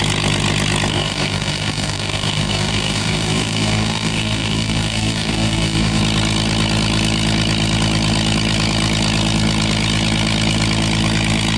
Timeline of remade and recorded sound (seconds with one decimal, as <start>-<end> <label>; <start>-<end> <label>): 0.0-0.9 recorded; 0.9-6.0 remade; 6.0-11.6 recorded